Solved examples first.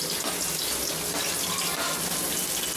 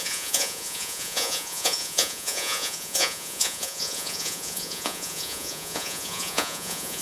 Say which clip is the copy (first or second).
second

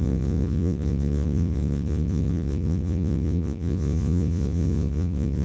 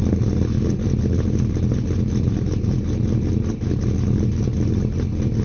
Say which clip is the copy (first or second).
first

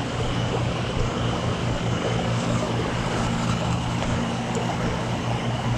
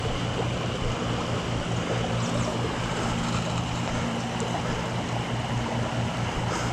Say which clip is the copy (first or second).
first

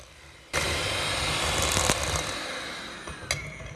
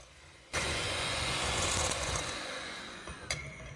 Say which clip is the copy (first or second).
second